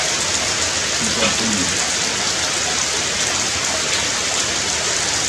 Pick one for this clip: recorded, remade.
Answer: recorded